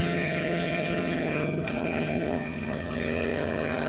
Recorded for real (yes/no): no